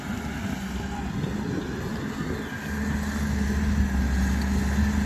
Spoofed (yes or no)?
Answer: no